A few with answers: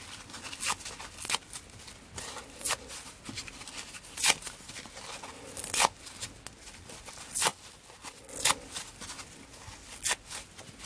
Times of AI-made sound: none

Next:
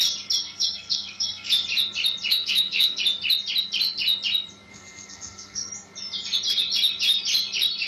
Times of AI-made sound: 0.4-1.5 (codec, SNAC); 2.3-3.0; 4.7-5.7

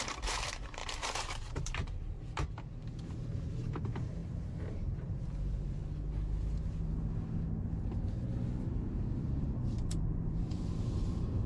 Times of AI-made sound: 0.0-5.8 (vocoder, BigVGAN v2); 9.1-11.5

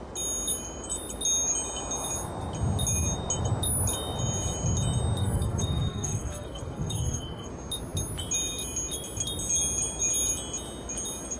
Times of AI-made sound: 5.2-7.5 (codec, SNAC)

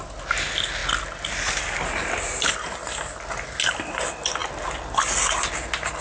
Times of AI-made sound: none

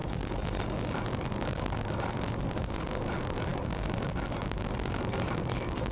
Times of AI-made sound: none

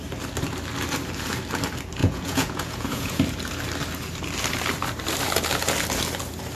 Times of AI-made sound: 2.0-3.2 (vocoder, Vocos)

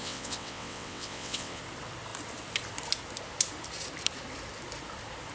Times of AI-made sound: 0.0-1.6 (vocoder, WaveNeXt)